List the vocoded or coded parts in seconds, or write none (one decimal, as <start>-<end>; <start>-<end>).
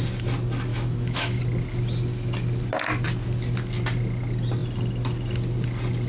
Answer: 0.7-1.4